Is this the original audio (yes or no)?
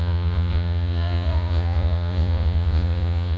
no